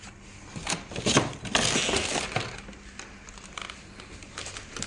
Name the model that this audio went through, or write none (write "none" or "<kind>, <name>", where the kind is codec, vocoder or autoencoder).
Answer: none